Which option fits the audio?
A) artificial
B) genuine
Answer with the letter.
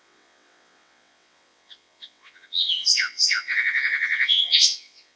A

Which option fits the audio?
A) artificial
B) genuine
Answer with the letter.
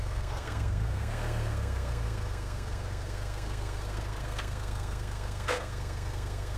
A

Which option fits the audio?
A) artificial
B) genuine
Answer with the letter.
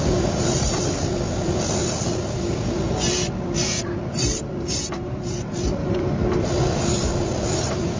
B